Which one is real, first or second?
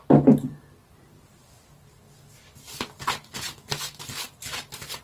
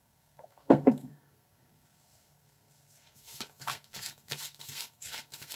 first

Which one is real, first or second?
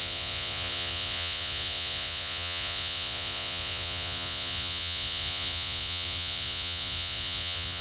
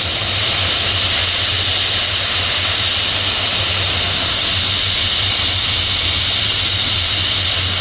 second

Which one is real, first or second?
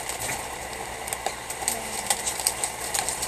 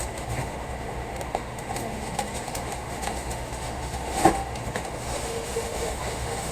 first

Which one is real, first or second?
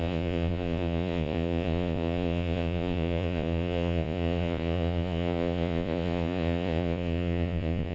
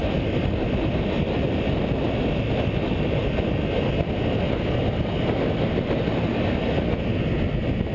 second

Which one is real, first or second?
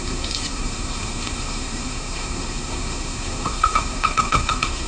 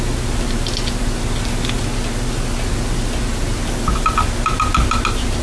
second